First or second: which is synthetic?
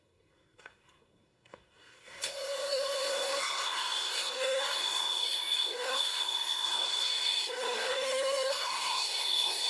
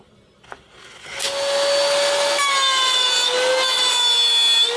first